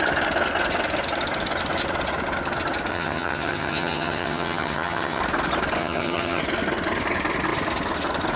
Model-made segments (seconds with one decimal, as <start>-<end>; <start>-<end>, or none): 2.9-5.2; 5.8-6.4